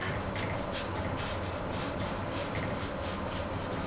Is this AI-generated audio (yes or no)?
no